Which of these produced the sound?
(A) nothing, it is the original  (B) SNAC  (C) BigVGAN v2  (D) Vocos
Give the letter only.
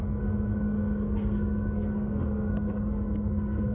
B